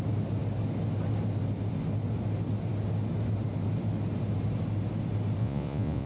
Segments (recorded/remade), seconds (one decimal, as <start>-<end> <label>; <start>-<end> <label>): 0.0-5.4 recorded; 5.4-6.1 remade